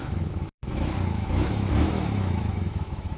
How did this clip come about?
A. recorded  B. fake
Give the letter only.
B